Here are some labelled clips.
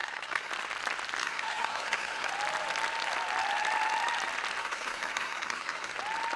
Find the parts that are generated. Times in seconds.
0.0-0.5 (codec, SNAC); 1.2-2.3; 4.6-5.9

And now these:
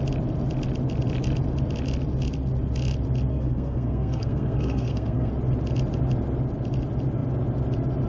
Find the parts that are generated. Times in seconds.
3.3-5.3 (codec, SNAC)

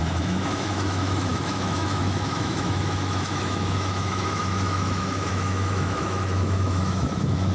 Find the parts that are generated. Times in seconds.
0.0-7.5 (autoencoder, DAC-VAE)